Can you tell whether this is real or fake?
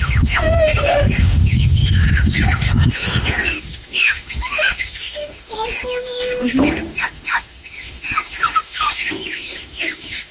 fake